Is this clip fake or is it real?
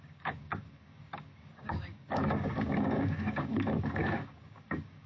fake